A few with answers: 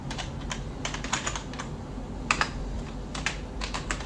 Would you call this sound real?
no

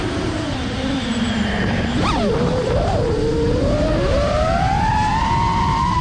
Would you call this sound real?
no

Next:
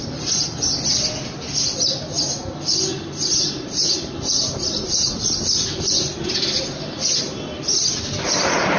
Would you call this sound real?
no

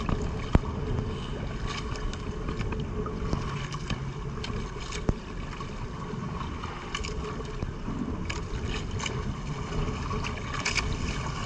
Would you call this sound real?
yes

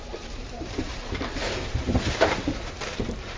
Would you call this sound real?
no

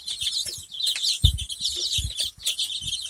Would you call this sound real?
yes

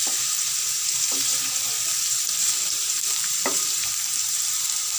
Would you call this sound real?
no